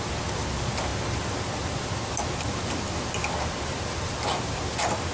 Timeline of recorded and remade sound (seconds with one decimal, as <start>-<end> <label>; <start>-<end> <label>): 0.0-5.1 recorded